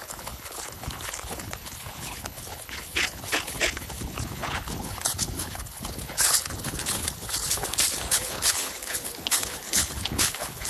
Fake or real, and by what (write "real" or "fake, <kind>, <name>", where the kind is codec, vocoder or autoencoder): fake, codec, HILCodec